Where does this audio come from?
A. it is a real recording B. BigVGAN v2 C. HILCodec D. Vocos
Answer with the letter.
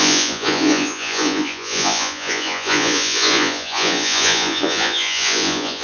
D